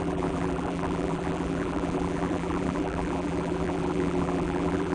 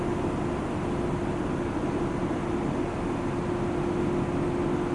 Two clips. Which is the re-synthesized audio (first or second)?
first